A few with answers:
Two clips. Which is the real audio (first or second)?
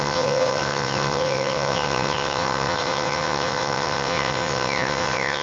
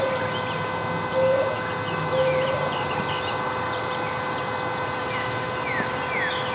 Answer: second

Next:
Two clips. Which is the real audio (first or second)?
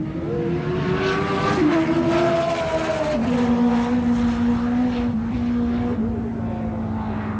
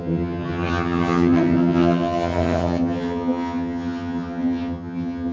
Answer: first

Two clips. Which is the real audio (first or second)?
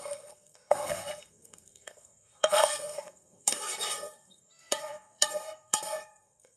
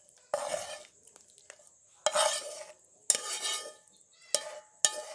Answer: second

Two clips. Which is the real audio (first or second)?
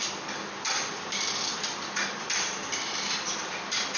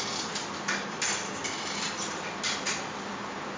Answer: second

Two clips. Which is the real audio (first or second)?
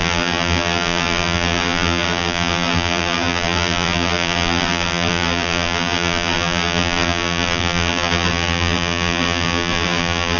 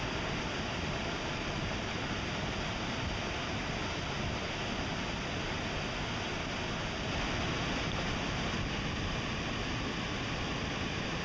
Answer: second